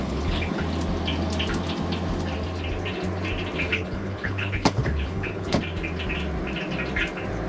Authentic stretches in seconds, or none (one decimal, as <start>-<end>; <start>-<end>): 0.6-3.7; 5.6-7.5